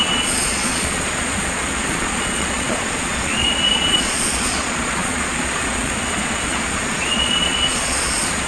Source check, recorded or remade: remade